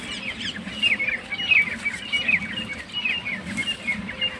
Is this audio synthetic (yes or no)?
no